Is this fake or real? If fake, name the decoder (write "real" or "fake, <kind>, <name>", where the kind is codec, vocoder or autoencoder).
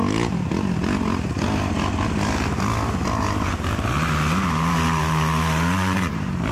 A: real